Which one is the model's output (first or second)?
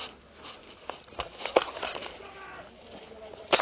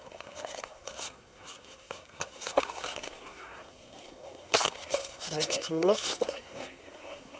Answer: second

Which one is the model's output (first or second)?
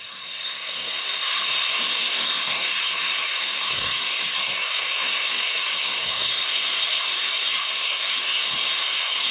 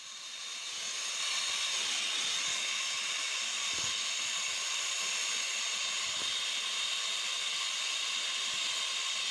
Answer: first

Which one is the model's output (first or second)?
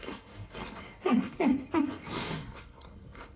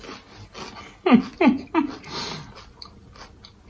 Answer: first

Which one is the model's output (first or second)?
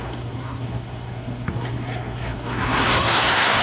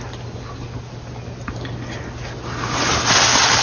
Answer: first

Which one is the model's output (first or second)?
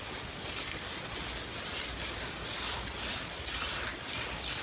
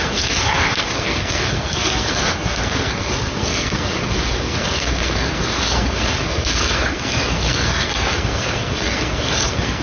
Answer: second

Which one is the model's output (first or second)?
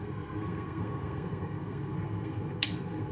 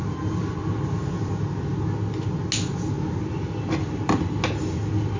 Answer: first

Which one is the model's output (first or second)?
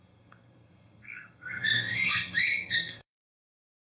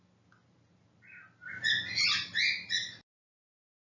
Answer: first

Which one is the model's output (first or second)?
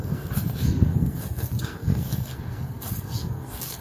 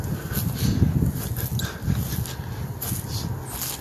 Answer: first